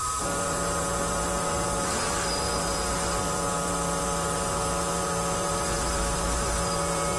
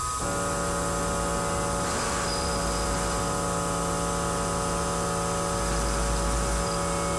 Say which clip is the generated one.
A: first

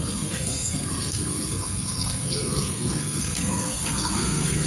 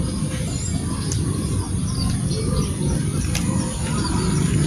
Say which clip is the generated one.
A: first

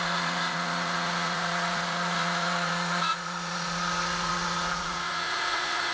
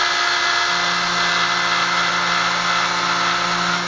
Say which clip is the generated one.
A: first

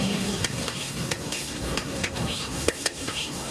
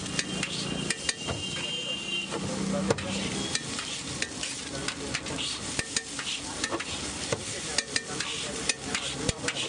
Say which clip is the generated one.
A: first